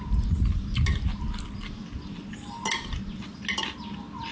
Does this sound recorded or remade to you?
recorded